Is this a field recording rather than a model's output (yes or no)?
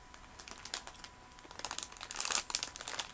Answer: yes